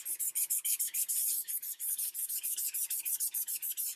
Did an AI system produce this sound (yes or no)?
yes